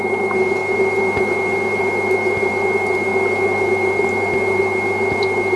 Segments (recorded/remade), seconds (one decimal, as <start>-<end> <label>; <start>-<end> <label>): 0.0-5.6 recorded